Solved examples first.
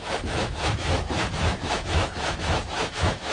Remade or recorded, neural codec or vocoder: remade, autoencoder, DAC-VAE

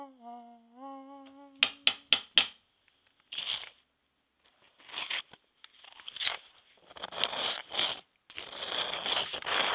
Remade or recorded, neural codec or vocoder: recorded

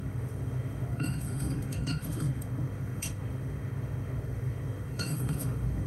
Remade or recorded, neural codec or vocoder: remade, autoencoder, DAC-VAE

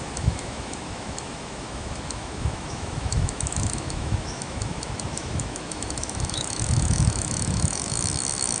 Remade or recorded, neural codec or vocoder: remade, autoencoder, DAC-VAE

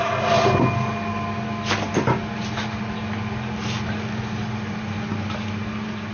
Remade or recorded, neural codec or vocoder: recorded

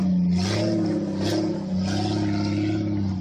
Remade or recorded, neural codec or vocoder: recorded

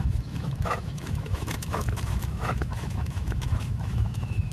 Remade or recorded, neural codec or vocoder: remade, autoencoder, DAC-VAE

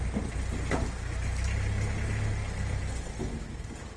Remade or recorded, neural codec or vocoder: recorded